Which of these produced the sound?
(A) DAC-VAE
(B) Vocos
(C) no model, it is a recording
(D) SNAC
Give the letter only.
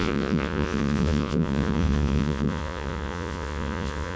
B